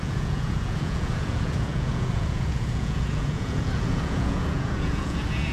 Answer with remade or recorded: remade